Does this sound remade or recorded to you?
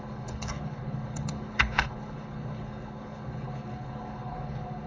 remade